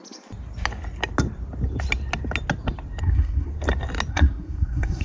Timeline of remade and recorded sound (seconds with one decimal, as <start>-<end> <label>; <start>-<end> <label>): 0.0-3.0 recorded; 3.0-3.5 remade; 3.5-4.1 recorded; 4.1-5.0 remade

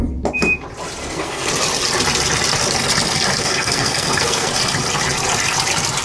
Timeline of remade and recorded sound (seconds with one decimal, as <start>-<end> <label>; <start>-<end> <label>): 0.0-1.0 recorded; 1.0-1.5 remade; 1.5-3.4 recorded; 3.4-4.5 remade; 4.5-6.0 recorded

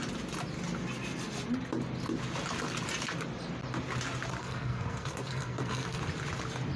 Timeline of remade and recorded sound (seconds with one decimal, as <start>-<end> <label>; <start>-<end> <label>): 0.0-4.4 recorded; 4.4-6.0 remade; 6.0-6.8 recorded

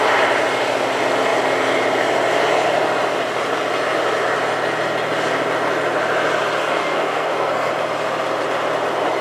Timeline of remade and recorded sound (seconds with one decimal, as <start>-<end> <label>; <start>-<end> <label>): 0.0-6.6 recorded; 6.6-7.7 remade; 7.7-9.2 recorded

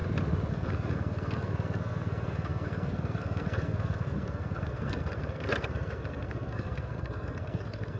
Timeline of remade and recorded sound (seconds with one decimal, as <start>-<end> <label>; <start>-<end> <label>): 0.0-0.5 recorded; 0.5-8.0 remade